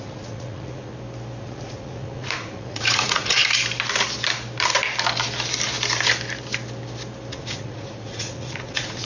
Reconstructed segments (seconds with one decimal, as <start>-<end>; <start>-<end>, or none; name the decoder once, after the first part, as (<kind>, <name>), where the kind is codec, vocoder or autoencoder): 0.0-0.9 (vocoder, Vocos); 1.4-3.4; 7.3-9.0